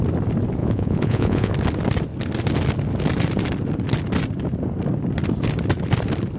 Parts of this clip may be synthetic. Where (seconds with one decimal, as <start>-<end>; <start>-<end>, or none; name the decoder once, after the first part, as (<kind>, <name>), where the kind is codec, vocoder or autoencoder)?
0.6-1.5 (vocoder, Vocos)